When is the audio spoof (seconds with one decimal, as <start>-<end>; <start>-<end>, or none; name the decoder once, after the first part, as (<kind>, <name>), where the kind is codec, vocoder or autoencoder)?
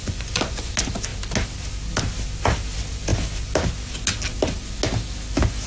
0.0-0.7 (vocoder, Vocos)